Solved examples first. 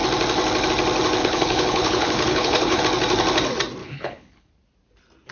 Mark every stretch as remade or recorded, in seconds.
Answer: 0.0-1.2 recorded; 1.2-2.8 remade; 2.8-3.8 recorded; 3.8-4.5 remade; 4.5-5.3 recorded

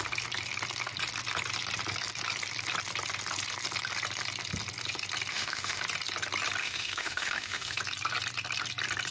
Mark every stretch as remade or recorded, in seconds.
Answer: 0.0-5.3 recorded; 5.3-5.8 remade; 5.8-6.6 recorded; 6.6-7.8 remade; 7.8-9.1 recorded

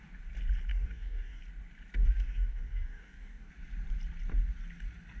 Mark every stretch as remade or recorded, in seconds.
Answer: 0.0-0.7 recorded; 0.7-1.4 remade; 1.4-2.0 recorded; 2.0-3.5 remade; 3.5-5.2 recorded

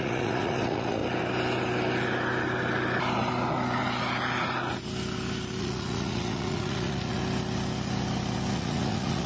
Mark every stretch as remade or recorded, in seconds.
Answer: 0.0-1.0 remade; 1.0-5.6 recorded; 5.6-7.2 remade; 7.2-8.5 recorded; 8.5-9.3 remade

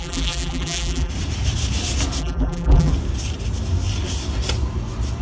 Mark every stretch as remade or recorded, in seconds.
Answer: 0.0-1.1 remade; 1.1-2.2 recorded; 2.2-2.9 remade; 2.9-5.2 recorded

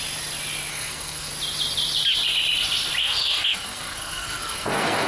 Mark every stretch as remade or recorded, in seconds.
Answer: 0.0-0.7 recorded; 0.7-1.3 remade; 1.3-3.0 recorded; 3.0-5.1 remade

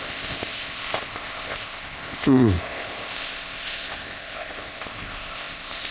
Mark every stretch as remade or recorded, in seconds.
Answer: 0.0-5.9 remade

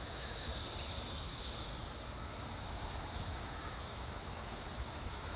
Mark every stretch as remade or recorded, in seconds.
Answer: 0.0-0.5 remade; 0.5-1.1 recorded; 1.1-1.7 remade; 1.7-2.3 recorded; 2.3-5.4 remade